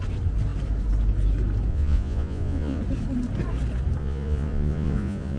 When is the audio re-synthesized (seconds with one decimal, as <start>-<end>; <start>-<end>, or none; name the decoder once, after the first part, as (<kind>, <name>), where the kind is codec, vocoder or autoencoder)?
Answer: 1.7-2.8 (vocoder, Vocos); 4.0-5.4